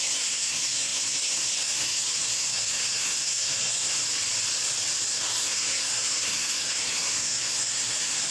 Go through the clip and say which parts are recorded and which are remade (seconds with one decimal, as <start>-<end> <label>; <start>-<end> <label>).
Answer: 0.0-4.0 remade; 4.0-5.1 recorded; 5.1-8.3 remade

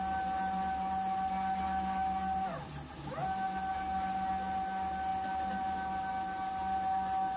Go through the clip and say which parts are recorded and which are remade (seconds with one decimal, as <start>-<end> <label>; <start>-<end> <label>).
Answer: 0.0-7.4 recorded

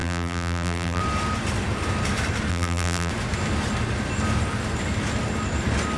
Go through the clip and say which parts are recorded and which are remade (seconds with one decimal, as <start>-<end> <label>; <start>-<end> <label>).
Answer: 0.0-1.0 remade; 1.0-2.5 recorded; 2.5-3.1 remade; 3.1-6.0 recorded

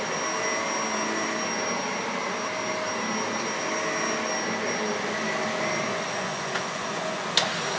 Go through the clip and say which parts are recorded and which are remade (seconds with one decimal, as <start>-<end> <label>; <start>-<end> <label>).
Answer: 0.0-5.9 recorded; 5.9-7.3 remade; 7.3-7.8 recorded

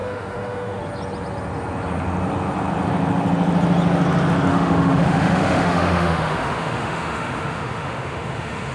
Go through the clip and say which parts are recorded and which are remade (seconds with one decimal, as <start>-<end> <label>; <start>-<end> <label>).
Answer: 0.0-0.8 remade; 0.8-4.5 recorded; 4.5-8.7 remade